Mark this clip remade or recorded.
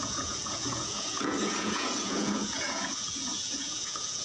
remade